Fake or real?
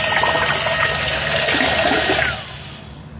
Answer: real